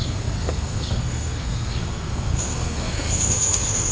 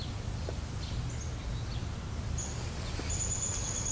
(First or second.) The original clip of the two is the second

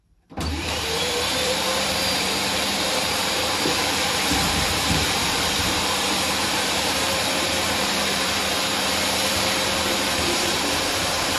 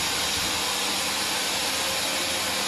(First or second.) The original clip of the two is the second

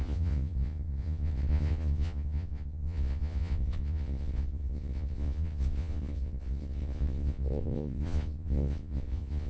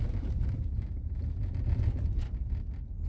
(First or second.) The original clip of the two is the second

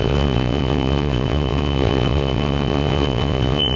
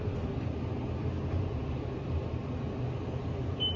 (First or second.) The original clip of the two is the second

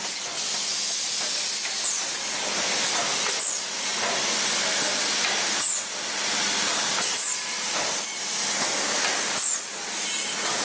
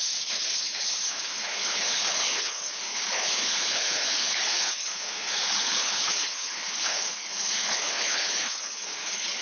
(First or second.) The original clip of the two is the first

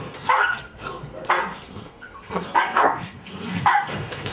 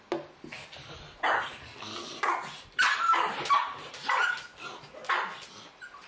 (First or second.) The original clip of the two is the second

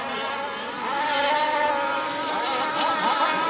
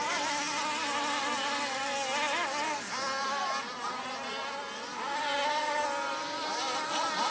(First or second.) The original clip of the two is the second